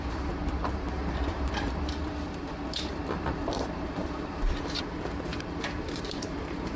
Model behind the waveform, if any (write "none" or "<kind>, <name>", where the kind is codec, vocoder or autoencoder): vocoder, BigVGAN v2